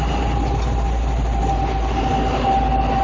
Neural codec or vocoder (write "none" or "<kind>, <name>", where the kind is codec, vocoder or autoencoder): none